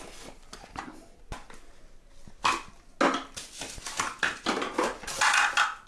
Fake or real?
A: real